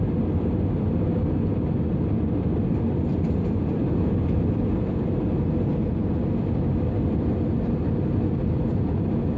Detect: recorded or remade recorded